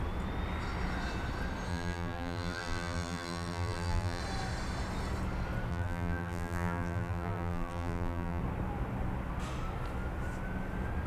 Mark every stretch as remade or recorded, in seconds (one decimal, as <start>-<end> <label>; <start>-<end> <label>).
0.0-1.7 recorded; 1.7-4.2 remade; 4.2-5.7 recorded; 5.7-8.4 remade; 8.4-11.1 recorded